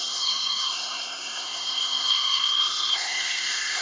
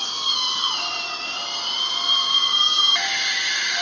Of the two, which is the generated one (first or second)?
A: first